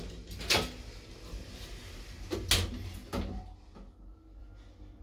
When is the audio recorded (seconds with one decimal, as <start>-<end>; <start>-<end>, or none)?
0.0-5.0

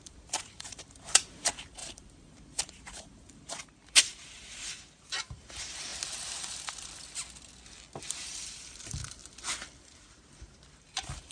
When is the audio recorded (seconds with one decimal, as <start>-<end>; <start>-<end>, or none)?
5.9-8.0; 9.2-9.8

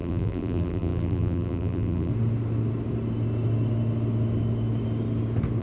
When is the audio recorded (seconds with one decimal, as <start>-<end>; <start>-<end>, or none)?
2.1-5.6

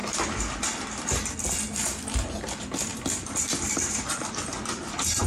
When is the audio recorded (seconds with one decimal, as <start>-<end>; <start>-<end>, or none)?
0.0-2.2

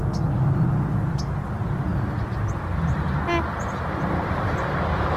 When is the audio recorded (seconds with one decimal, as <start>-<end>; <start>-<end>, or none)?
0.0-5.2

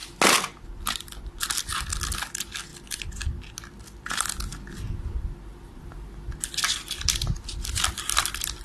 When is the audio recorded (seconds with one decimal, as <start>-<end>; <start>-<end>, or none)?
0.0-8.6

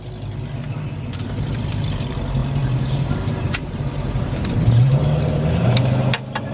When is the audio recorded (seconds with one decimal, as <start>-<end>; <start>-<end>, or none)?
0.0-2.4; 5.7-6.5

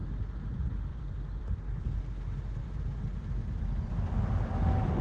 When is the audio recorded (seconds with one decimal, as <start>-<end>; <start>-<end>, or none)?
0.0-0.9; 2.0-2.6; 3.9-5.0